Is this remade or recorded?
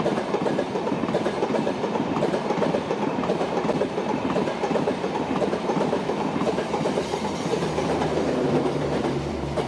remade